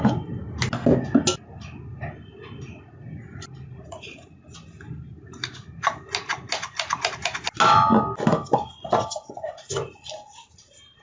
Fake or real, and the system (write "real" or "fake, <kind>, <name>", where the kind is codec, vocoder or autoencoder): real